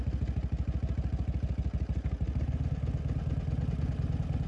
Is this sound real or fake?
real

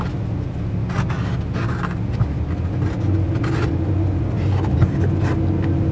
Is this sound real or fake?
real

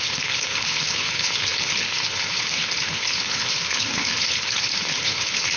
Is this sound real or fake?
fake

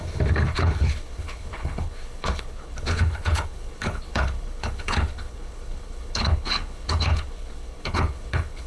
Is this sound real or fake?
fake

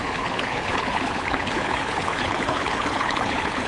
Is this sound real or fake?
fake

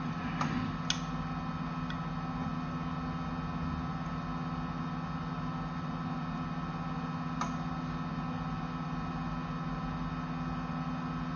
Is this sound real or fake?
real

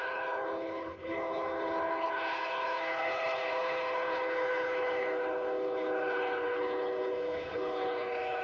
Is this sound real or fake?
fake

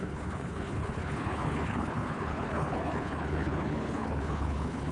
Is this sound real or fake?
fake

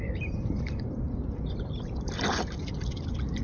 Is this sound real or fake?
real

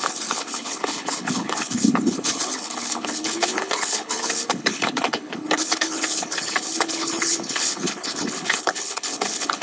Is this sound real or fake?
fake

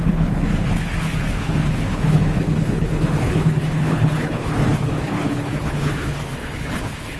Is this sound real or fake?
fake